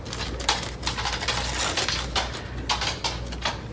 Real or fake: real